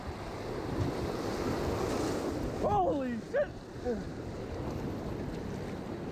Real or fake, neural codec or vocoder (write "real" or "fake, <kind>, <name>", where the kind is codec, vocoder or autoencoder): real